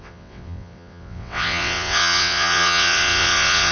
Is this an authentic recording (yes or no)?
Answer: no